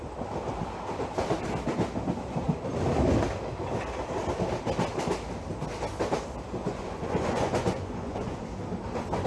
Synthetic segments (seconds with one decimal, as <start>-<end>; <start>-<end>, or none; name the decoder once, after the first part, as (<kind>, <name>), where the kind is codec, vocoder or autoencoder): 6.6-8.4 (vocoder, Vocos)